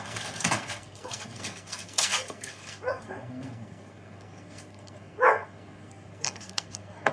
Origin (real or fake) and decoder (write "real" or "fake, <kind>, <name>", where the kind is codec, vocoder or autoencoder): fake, codec, SNAC